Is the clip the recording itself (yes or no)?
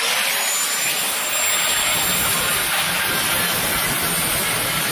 yes